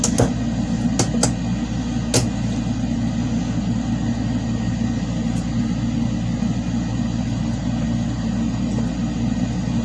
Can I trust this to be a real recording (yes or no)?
yes